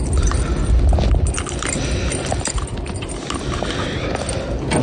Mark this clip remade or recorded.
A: recorded